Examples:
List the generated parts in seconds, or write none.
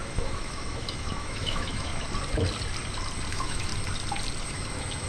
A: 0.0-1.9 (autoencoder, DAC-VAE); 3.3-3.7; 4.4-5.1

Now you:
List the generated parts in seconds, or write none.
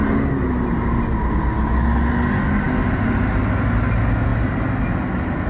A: none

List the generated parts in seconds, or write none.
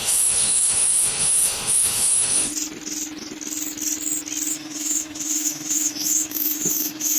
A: 0.0-2.5 (autoencoder, DAC-VAE); 4.5-7.2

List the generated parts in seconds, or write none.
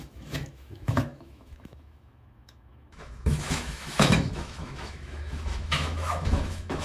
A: 0.0-6.8 (autoencoder, DAC-VAE)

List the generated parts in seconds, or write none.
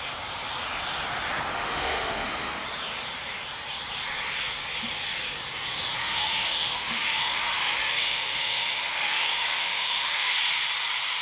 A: 1.5-2.6 (autoencoder, DAC-VAE); 6.0-10.3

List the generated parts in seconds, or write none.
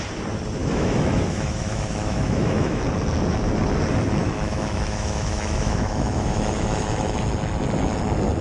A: 0.6-2.8 (autoencoder, DAC-VAE); 4.2-7.2